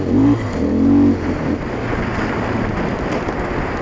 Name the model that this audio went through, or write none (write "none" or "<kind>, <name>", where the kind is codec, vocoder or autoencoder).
none